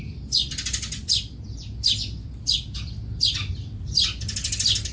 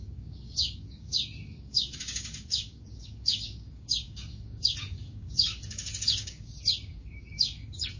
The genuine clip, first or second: first